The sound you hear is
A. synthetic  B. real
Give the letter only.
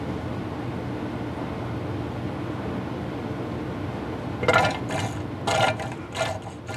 B